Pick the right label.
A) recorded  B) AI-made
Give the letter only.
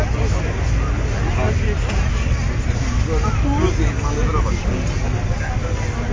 A